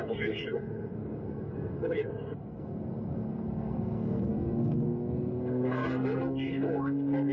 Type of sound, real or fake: fake